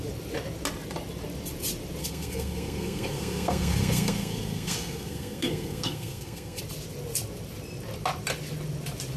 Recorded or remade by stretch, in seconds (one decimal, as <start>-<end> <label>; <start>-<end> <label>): 0.0-2.0 recorded; 2.0-6.6 remade; 6.6-9.2 recorded